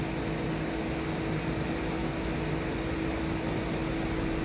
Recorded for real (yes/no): yes